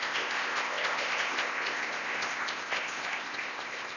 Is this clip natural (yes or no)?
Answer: no